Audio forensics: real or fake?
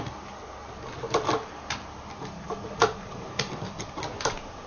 real